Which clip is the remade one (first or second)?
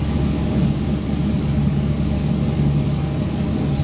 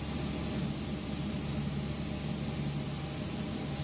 first